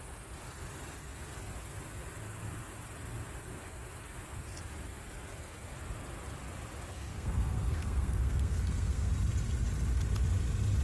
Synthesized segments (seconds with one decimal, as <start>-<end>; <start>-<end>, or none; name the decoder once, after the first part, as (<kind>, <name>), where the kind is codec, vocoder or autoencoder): 7.1-9.1 (codec, SNAC)